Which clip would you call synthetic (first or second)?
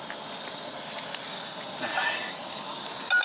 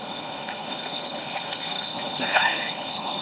second